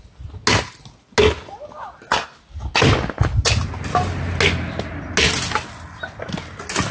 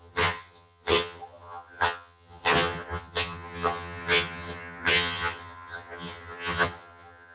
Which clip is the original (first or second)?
first